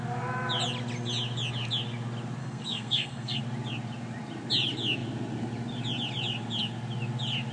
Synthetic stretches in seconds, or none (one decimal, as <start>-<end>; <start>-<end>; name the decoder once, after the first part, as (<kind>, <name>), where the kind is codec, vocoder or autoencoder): 2.4-3.4 (codec, SNAC)